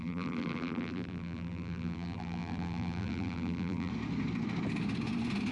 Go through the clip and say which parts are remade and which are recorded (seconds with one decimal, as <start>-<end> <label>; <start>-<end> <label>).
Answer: 0.0-3.9 remade; 3.9-5.5 recorded